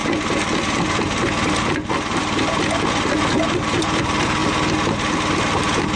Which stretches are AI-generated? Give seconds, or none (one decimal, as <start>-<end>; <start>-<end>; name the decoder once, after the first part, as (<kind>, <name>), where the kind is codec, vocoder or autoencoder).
3.6-4.4 (vocoder, BigVGAN v2)